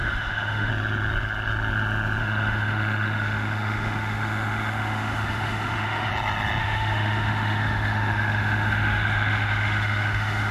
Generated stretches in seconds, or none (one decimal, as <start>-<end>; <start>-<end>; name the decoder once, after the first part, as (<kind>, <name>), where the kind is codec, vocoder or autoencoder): 0.0-0.7 (autoencoder, DAC-VAE); 2.2-6.1; 6.6-10.5